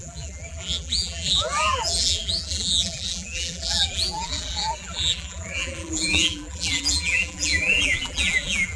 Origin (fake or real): fake